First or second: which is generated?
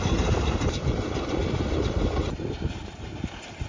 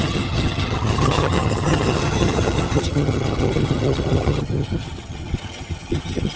second